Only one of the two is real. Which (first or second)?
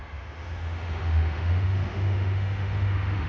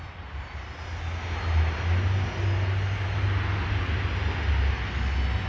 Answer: second